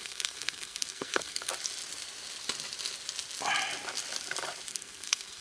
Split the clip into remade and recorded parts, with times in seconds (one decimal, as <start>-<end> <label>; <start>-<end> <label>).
0.0-1.5 remade; 1.5-4.7 recorded; 4.7-5.4 remade